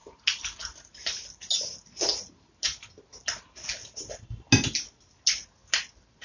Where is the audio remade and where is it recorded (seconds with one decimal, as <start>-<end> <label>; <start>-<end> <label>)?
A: 0.0-6.2 recorded